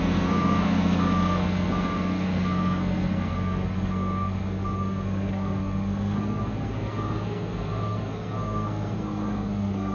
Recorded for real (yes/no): no